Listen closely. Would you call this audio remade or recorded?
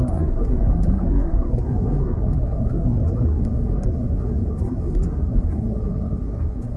remade